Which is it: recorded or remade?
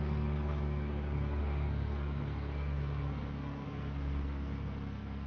remade